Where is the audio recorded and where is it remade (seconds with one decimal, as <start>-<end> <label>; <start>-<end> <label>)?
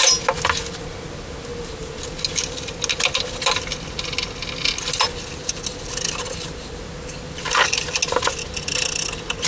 0.0-9.5 recorded